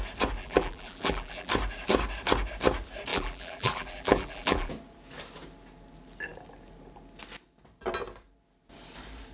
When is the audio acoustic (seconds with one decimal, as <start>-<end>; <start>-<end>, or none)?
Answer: 0.0-0.4; 1.5-3.1; 4.7-9.3

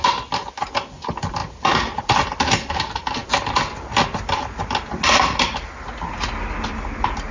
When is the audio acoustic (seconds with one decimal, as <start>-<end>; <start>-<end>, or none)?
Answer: 0.0-7.3